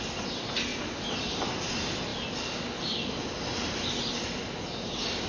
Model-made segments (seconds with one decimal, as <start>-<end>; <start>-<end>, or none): 0.7-1.7